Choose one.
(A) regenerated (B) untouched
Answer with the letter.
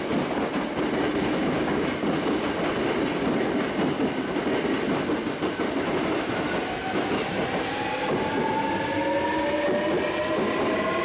B